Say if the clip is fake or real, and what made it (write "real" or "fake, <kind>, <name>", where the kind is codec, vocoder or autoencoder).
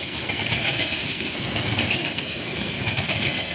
fake, codec, SNAC